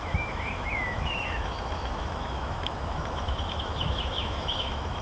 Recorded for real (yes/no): no